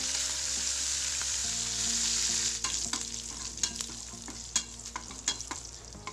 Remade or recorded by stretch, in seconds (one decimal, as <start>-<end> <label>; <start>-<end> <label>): 0.0-1.4 remade; 1.4-5.1 recorded; 5.1-6.1 remade